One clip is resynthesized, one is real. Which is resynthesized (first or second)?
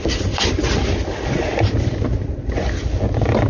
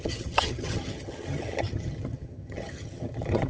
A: second